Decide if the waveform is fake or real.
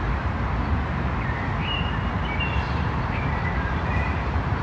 fake